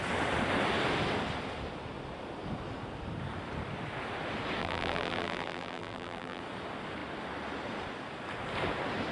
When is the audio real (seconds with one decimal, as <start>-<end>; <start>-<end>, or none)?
0.0-4.6; 6.4-9.1